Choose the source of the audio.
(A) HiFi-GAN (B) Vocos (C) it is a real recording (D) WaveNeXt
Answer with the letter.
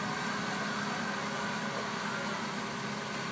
C